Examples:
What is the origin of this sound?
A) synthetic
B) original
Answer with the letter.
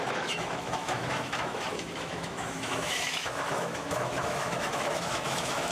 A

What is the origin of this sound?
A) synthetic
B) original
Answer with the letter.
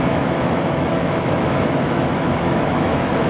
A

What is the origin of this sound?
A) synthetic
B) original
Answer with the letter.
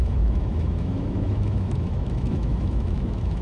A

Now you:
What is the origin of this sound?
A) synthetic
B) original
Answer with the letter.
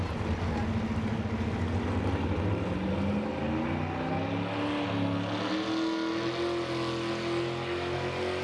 B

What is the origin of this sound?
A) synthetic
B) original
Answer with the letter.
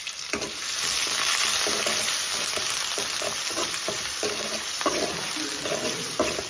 B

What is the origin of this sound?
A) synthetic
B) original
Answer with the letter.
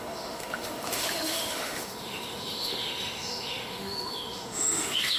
A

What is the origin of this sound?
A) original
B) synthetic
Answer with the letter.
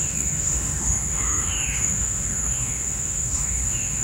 B